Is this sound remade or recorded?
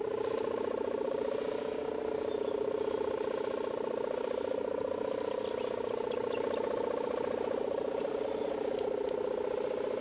recorded